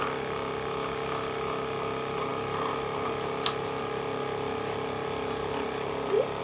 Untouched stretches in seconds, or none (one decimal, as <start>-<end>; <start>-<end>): 0.0-6.4